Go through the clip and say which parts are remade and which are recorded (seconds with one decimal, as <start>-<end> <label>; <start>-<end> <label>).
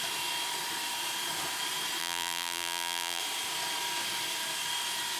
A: 0.0-2.0 recorded; 2.0-3.2 remade; 3.2-5.2 recorded